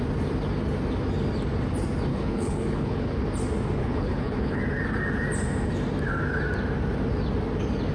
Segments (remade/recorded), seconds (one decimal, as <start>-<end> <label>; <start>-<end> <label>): 0.0-2.1 recorded; 2.1-3.2 remade; 3.2-3.8 recorded; 3.8-4.6 remade; 4.6-7.9 recorded